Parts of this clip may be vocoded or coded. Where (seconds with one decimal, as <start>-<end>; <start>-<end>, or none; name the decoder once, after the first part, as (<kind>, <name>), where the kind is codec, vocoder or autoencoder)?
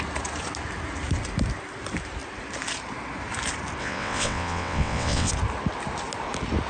3.8-5.3 (vocoder, WaveNeXt)